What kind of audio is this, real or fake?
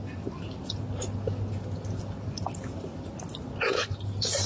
real